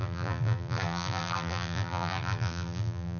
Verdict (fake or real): fake